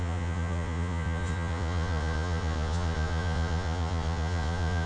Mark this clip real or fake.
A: fake